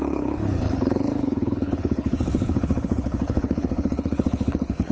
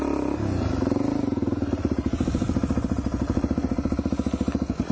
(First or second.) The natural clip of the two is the second